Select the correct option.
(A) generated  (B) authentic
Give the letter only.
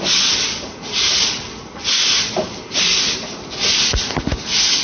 B